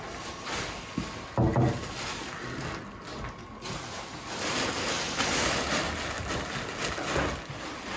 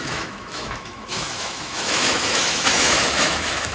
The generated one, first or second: second